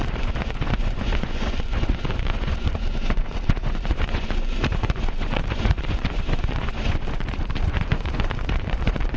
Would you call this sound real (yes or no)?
no